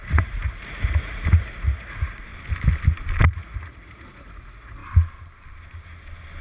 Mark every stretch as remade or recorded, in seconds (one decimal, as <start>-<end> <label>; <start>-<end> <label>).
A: 0.0-2.3 remade; 2.3-3.3 recorded; 3.3-4.8 remade; 4.8-6.4 recorded